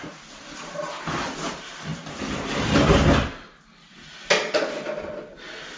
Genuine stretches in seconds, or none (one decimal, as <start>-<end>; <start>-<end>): 0.0-5.8